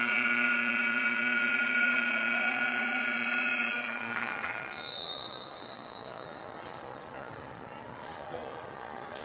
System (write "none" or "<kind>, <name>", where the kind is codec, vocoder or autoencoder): vocoder, Vocos